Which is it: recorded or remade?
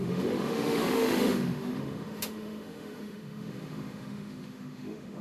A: remade